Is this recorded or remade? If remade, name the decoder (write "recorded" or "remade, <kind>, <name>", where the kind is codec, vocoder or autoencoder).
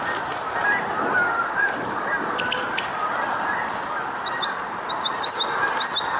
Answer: recorded